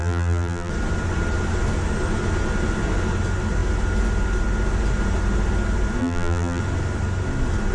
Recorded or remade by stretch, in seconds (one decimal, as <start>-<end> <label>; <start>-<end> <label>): 0.0-0.7 remade; 0.7-6.0 recorded; 6.0-6.6 remade; 6.6-7.7 recorded